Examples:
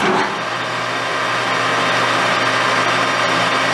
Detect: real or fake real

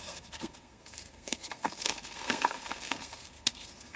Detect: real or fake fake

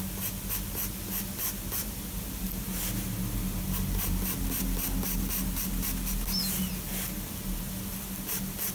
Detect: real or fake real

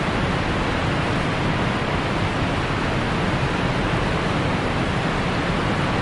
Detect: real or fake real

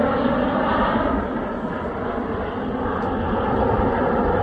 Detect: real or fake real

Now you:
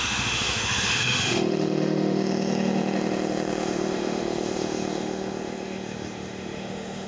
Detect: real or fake fake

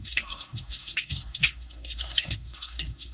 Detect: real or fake fake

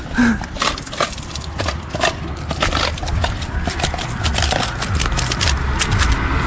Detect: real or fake real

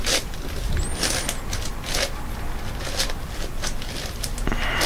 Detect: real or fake real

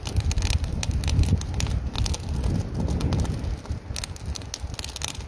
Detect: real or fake real